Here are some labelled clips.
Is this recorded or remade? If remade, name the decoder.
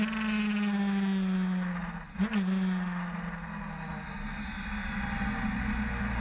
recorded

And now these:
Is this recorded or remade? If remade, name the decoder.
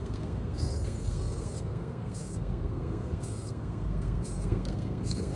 remade, codec, SNAC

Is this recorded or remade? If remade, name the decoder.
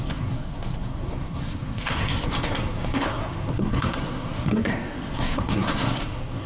remade, codec, SNAC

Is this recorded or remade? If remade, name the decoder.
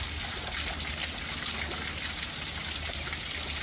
recorded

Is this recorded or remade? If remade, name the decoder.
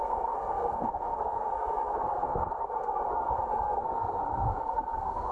remade, codec, SNAC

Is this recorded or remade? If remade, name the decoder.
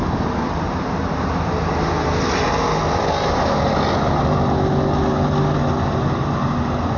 recorded